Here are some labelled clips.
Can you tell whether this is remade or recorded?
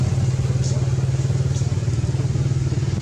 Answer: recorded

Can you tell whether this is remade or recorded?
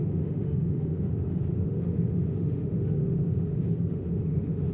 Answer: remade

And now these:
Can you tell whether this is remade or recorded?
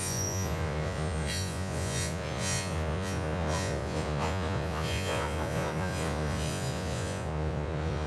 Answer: remade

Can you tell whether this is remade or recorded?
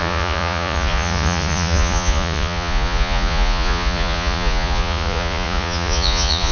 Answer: remade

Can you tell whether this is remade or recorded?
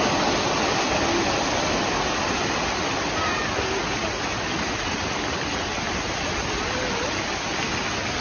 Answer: recorded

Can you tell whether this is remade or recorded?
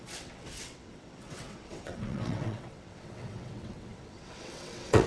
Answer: remade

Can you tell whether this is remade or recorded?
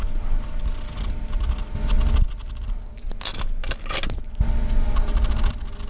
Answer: recorded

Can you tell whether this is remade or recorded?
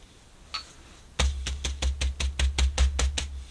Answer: recorded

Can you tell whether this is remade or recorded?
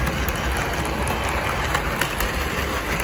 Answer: recorded